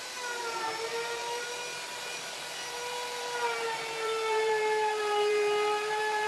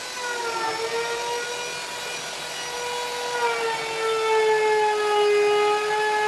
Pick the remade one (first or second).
first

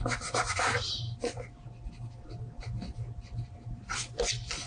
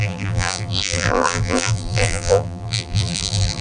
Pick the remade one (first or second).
second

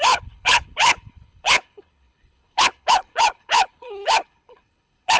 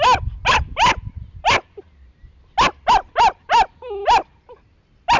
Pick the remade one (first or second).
first